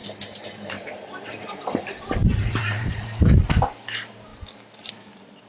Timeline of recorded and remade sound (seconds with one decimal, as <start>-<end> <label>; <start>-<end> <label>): 0.0-3.3 remade; 3.3-5.5 recorded